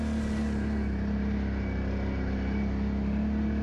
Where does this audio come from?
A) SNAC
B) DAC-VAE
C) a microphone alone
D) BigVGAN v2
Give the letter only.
C